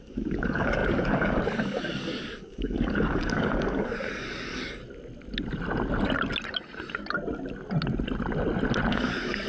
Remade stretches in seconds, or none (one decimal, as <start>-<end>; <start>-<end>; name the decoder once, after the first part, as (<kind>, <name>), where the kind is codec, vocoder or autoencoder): 0.0-4.8 (codec, DAC); 8.9-9.5